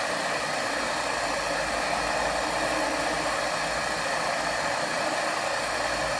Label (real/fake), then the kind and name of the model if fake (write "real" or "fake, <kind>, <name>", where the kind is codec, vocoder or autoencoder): real